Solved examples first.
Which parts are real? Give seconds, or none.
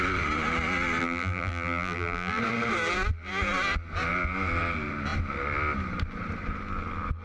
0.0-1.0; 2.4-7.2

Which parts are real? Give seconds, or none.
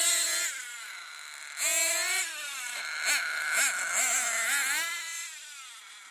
0.0-6.1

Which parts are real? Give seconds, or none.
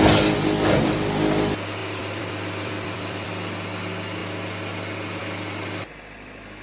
0.0-1.8; 3.3-6.6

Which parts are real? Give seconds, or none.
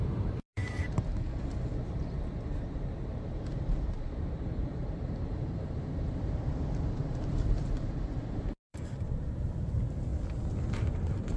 0.6-2.6; 10.1-10.7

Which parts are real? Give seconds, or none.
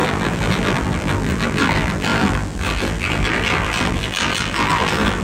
none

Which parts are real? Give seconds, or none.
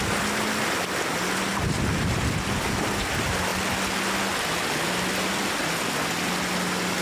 0.0-7.0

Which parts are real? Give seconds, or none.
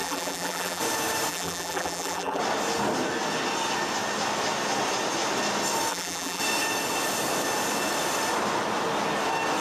0.8-1.3; 2.4-5.9; 6.4-9.6